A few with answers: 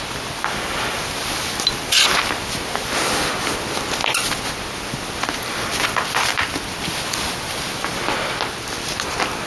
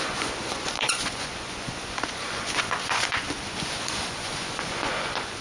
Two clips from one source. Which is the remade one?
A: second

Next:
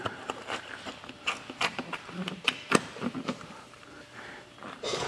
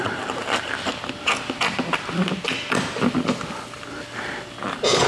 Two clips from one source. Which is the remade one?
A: first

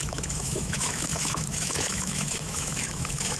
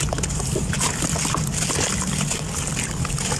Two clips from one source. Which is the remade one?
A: first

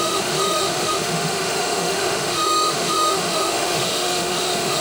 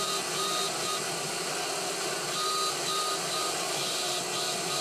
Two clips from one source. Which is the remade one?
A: first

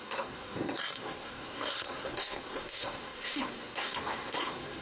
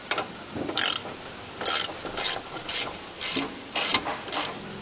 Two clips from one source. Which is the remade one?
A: first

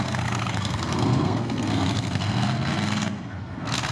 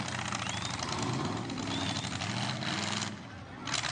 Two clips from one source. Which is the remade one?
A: first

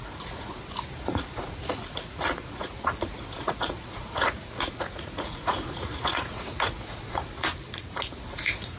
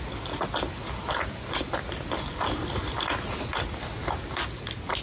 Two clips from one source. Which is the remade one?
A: first